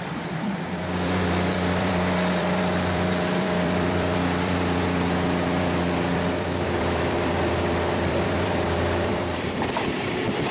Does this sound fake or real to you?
fake